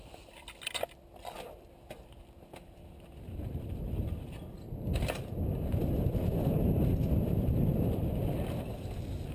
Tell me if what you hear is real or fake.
real